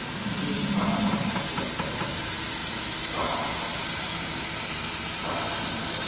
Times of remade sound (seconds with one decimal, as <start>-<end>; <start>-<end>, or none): none